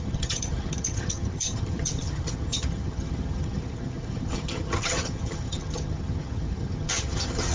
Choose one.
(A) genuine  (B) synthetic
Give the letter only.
B